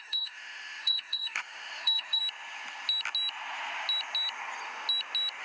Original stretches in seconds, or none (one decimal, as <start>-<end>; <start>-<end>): 2.2-5.4